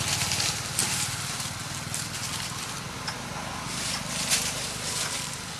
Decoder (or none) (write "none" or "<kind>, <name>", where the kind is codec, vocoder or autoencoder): none